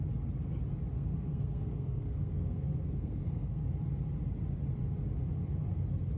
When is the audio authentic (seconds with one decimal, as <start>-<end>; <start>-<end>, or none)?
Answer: 0.0-0.9; 3.6-6.2